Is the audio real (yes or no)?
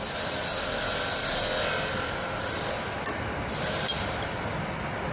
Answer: yes